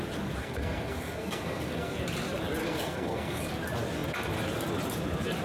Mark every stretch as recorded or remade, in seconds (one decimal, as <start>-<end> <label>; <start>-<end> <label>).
0.0-0.4 recorded; 0.4-2.0 remade; 2.0-2.6 recorded; 2.6-3.5 remade; 3.5-5.4 recorded